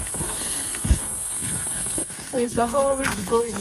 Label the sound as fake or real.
fake